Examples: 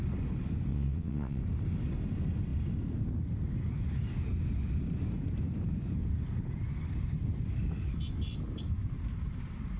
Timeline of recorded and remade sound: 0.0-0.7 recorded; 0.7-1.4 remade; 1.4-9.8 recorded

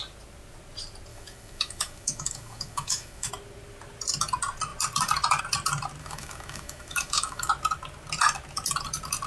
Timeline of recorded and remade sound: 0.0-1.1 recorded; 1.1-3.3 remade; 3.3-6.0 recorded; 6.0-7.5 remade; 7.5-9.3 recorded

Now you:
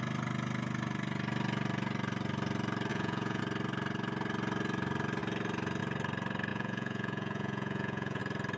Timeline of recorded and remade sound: 0.0-2.9 recorded; 2.9-3.4 remade; 3.4-6.5 recorded; 6.5-8.2 remade; 8.2-8.6 recorded

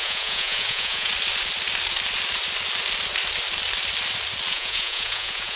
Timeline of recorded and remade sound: 0.0-1.1 remade; 1.1-4.5 recorded; 4.5-5.6 remade